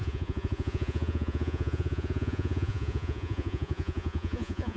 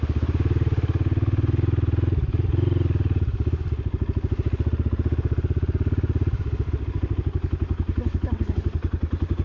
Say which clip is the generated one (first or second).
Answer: first